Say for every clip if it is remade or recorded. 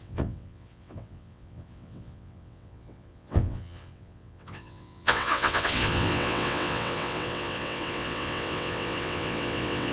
remade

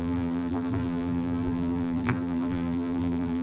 remade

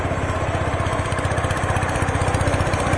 remade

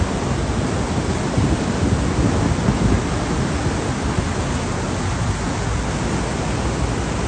recorded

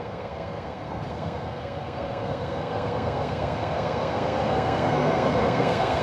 remade